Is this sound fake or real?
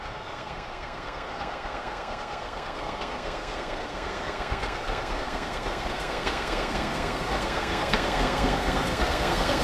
fake